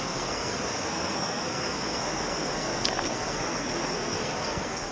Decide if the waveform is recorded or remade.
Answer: remade